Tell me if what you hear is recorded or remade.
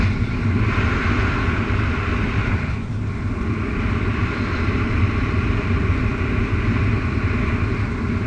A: recorded